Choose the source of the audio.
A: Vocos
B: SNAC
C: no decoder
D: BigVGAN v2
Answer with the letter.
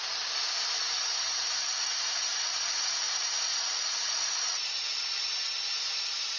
D